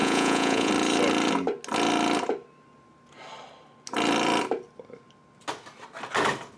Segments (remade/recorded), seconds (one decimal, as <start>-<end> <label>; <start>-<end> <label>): 0.0-0.7 remade; 0.7-6.6 recorded

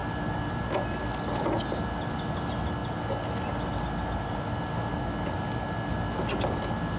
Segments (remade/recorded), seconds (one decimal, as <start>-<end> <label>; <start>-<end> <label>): 0.0-7.0 recorded

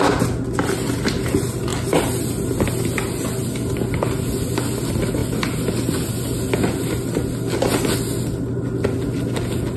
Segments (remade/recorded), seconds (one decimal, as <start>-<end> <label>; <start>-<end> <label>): 0.0-9.8 recorded

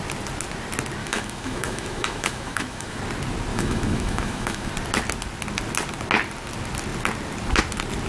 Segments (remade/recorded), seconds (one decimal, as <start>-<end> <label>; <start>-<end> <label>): 0.0-1.0 recorded; 1.0-3.0 remade; 3.0-3.5 recorded; 3.5-4.7 remade; 4.7-8.1 recorded

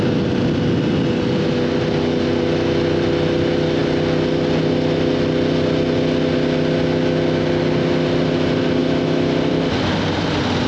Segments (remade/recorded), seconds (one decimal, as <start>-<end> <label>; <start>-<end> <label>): 0.0-8.8 recorded; 8.8-10.7 remade

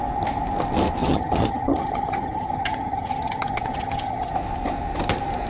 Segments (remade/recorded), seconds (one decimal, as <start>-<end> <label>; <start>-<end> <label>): 0.0-1.0 recorded; 1.0-4.3 remade; 4.3-5.5 recorded

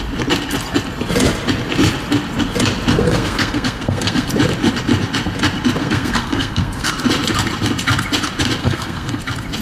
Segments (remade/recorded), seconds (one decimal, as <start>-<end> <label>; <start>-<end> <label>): 0.0-2.9 recorded; 2.9-4.3 remade; 4.3-5.8 recorded; 5.8-6.9 remade; 6.9-8.6 recorded; 8.6-9.2 remade; 9.2-9.6 recorded

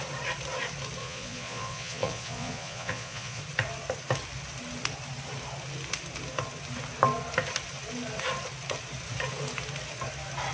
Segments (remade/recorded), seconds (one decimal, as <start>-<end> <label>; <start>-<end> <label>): 0.0-1.0 recorded; 1.0-3.4 remade; 3.4-10.5 recorded